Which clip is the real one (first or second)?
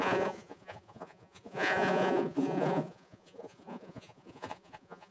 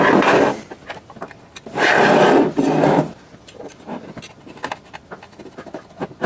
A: second